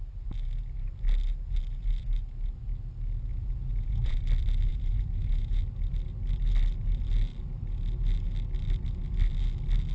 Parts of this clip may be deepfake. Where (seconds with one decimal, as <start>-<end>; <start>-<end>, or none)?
3.3-4.2; 4.7-5.6